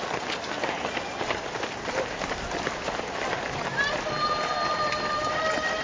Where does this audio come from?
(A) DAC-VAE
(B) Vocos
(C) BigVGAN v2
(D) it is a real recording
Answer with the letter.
C